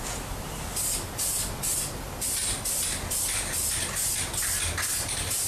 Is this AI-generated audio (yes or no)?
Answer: no